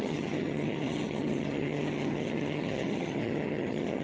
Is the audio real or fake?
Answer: fake